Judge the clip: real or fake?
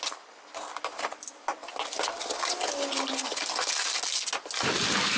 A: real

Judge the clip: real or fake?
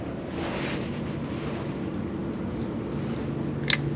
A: real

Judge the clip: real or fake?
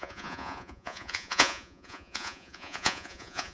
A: fake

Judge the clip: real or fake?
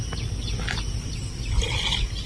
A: real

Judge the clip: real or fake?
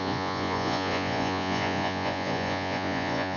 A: fake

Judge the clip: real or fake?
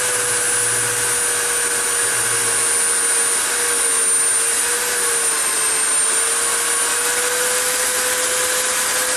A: real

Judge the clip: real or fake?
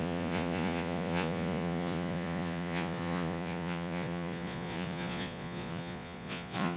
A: fake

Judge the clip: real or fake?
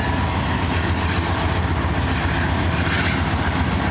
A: real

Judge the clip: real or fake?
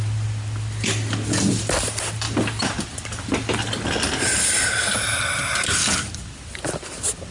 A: real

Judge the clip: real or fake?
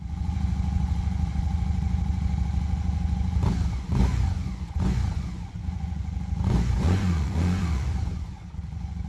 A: fake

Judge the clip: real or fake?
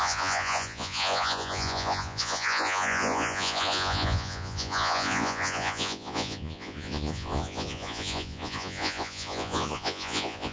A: fake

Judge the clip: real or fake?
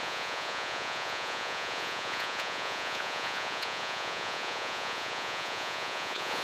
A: fake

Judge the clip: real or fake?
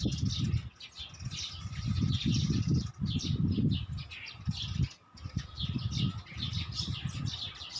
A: real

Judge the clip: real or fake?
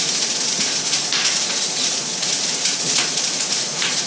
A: fake